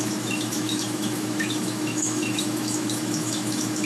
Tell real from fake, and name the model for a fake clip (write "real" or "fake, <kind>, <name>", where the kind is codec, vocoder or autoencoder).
fake, autoencoder, DAC-VAE